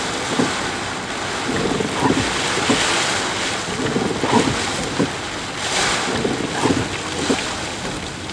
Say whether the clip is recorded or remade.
recorded